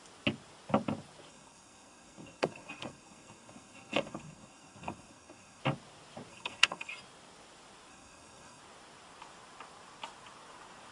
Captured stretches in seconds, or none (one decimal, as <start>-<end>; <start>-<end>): 0.0-1.3; 5.6-6.3; 6.9-7.9; 8.6-10.9